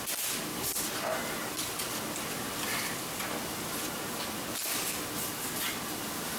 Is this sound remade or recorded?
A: recorded